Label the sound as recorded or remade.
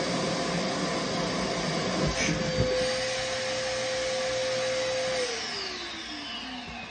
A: recorded